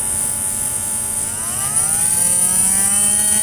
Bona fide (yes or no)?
yes